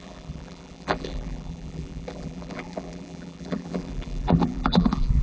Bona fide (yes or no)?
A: no